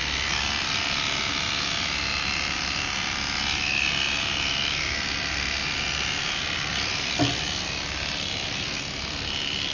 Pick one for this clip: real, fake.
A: real